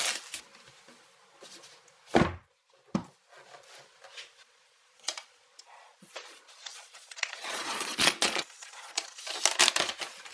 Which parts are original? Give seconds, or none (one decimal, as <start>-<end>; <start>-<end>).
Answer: 0.0-4.4; 9.2-10.3